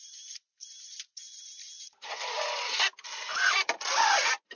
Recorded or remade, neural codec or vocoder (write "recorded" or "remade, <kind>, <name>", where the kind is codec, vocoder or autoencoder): recorded